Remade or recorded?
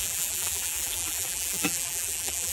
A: remade